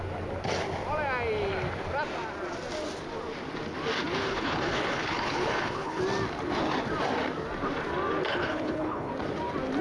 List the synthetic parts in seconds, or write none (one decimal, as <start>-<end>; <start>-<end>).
4.2-6.0; 8.3-9.1

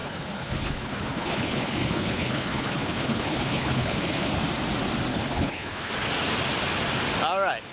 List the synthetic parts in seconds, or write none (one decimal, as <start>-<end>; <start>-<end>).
0.0-4.3; 5.1-5.9

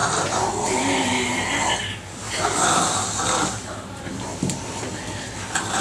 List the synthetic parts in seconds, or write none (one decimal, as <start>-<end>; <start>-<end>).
3.5-4.3

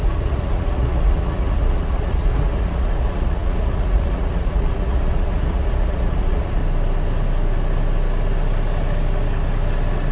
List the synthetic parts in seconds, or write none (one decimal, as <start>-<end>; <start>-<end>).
0.0-6.6